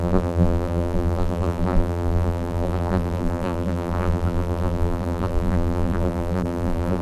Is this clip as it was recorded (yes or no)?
no